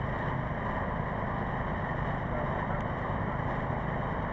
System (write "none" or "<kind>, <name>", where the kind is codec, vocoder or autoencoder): none